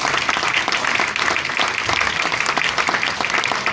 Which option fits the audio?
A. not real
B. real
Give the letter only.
B